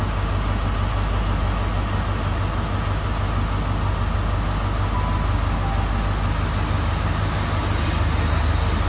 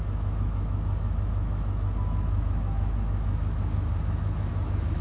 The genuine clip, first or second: first